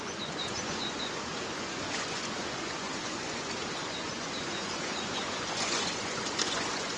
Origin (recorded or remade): remade